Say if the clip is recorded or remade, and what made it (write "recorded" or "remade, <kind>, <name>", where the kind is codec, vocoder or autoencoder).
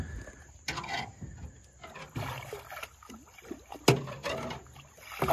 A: recorded